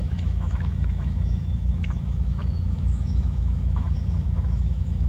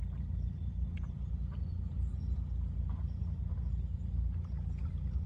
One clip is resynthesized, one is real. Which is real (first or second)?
second